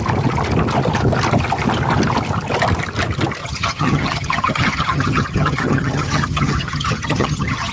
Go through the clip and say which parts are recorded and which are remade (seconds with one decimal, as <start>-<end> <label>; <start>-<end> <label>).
0.0-3.4 recorded; 3.4-7.7 remade